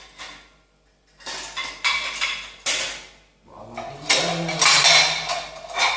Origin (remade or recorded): recorded